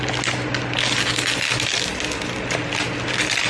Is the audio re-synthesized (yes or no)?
no